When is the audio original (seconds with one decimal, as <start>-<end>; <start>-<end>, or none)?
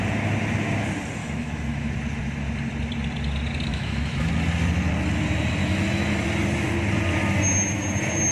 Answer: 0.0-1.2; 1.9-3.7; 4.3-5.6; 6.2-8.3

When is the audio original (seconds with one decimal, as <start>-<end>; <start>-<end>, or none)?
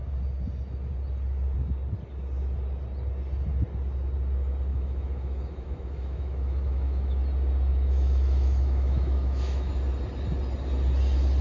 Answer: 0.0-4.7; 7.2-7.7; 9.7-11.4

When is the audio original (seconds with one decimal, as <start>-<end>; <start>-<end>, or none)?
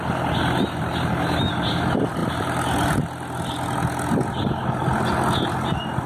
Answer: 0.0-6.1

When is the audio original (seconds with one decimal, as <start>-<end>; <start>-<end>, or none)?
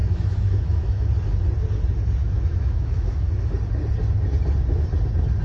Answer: 1.1-2.2; 3.3-5.4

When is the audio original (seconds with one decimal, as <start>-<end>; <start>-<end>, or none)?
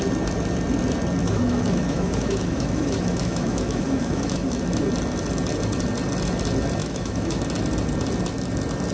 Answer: 0.0-1.2; 4.6-6.8; 7.4-8.9